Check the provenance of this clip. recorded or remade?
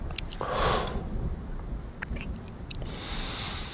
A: recorded